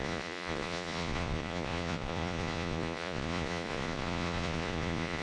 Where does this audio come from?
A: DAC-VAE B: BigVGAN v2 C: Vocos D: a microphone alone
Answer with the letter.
C